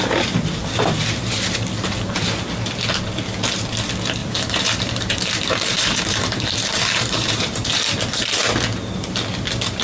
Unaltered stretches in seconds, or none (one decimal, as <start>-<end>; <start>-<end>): 0.0-4.2; 7.8-9.8